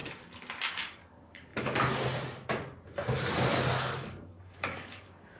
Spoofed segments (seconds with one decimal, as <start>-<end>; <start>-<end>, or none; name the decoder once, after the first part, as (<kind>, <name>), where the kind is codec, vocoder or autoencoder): 0.7-1.5 (codec, DAC); 3.7-5.4